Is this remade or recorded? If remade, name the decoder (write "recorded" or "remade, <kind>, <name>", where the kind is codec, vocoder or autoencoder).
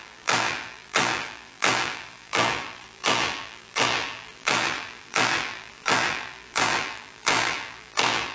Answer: remade, vocoder, BigVGAN v2